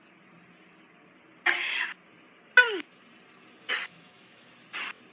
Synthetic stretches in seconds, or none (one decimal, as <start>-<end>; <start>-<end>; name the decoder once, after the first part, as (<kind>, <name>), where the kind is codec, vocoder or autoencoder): 3.8-4.5 (autoencoder, DAC-VAE)